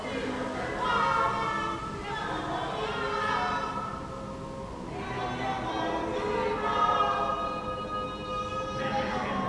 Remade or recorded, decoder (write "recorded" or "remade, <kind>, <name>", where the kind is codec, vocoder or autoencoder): recorded